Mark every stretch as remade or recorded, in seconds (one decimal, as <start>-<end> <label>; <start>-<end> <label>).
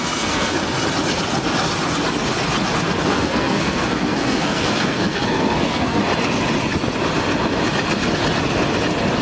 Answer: 0.0-0.6 remade; 0.6-3.0 recorded; 3.0-6.0 remade; 6.0-9.2 recorded